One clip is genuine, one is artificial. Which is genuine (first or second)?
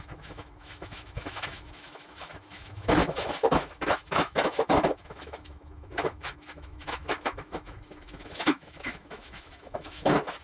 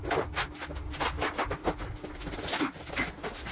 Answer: second